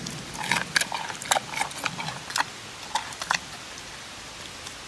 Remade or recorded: recorded